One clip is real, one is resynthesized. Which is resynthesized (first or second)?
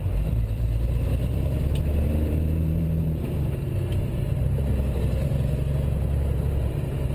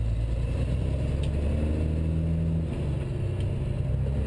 first